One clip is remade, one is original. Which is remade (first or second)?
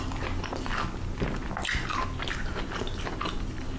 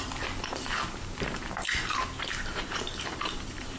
second